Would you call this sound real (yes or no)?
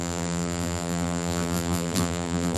no